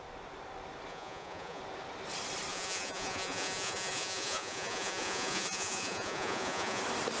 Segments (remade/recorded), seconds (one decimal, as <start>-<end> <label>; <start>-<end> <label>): 0.0-0.9 recorded; 0.9-1.6 remade; 1.6-2.5 recorded; 2.5-6.8 remade; 6.8-7.2 recorded